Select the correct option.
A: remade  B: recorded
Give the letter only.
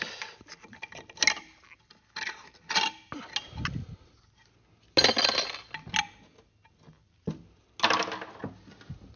B